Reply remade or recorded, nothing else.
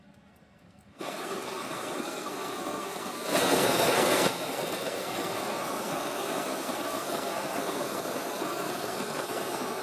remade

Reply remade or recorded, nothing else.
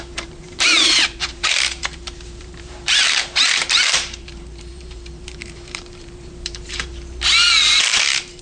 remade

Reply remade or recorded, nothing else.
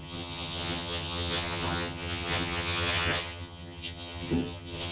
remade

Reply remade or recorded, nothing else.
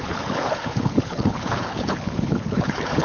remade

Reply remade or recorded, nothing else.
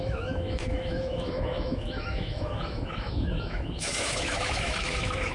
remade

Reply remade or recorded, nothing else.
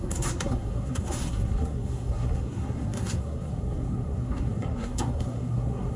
remade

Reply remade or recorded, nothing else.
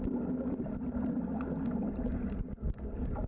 recorded